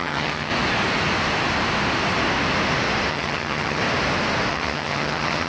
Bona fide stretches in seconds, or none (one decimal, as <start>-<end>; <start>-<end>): 0.5-3.1; 3.8-4.5